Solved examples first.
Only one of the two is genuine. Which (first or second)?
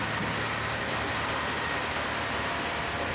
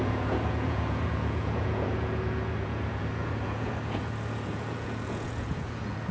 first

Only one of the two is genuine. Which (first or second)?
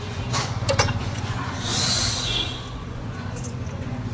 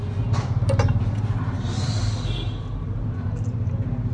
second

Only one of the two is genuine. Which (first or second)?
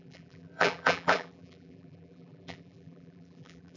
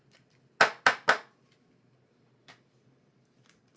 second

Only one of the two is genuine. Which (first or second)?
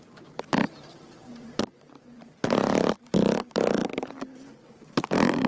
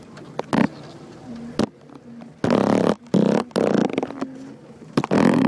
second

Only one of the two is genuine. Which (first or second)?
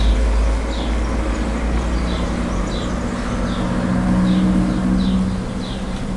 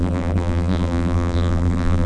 first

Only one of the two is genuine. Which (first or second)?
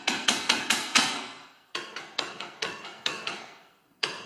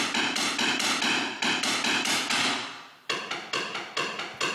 second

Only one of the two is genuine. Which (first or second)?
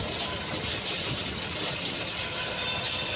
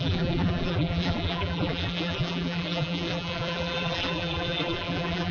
first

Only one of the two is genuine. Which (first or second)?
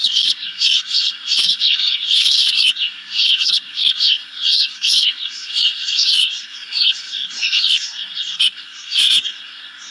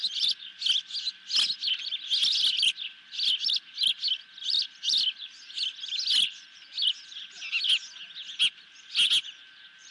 second